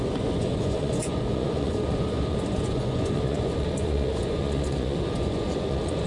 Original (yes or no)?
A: no